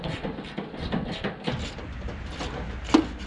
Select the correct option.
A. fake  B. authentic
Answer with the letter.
B